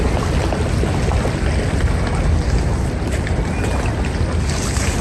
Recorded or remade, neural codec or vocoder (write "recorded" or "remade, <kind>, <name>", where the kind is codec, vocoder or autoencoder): recorded